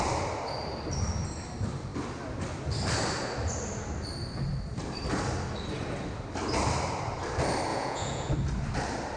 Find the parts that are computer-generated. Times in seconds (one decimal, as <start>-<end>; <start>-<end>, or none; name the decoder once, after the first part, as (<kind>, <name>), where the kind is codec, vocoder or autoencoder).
7.7-8.3 (vocoder, Vocos)